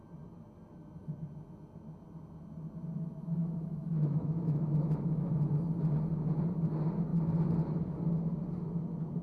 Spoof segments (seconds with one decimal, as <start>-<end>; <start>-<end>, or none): 3.4-5.3